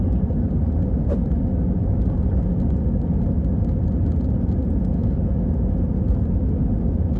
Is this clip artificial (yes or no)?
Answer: no